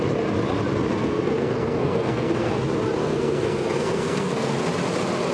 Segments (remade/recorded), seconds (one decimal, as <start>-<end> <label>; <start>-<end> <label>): 0.0-0.9 recorded; 0.9-2.5 remade; 2.5-3.0 recorded; 3.0-4.5 remade; 4.5-5.3 recorded